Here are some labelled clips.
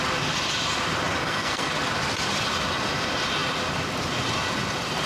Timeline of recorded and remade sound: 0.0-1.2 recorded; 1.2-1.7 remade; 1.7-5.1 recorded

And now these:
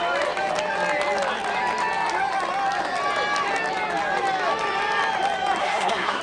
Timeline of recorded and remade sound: 0.0-5.6 recorded; 5.6-6.2 remade

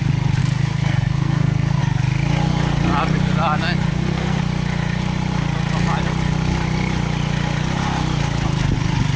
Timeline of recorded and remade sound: 0.0-0.4 recorded; 0.4-1.8 remade; 1.8-3.9 recorded; 3.9-4.4 remade; 4.4-9.2 recorded

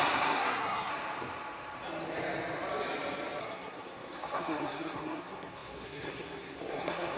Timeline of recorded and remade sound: 0.0-0.9 remade; 0.9-3.4 recorded; 3.4-7.2 remade

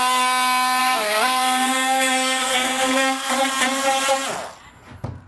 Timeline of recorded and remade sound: 0.0-0.8 recorded; 0.8-3.3 remade; 3.3-5.3 recorded

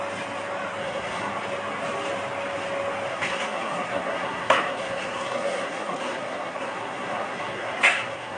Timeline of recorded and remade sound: 0.0-0.8 recorded; 0.8-1.3 remade; 1.3-3.1 recorded; 3.1-8.4 remade

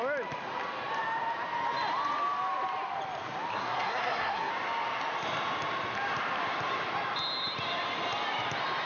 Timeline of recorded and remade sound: 0.0-3.5 recorded; 3.5-4.5 remade; 4.5-8.9 recorded

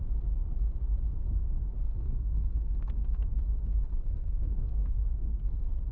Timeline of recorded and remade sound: 0.0-1.8 recorded; 1.8-3.4 remade; 3.4-3.9 recorded; 3.9-5.5 remade; 5.5-5.9 recorded